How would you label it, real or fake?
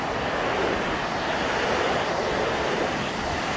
real